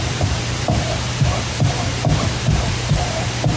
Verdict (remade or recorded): remade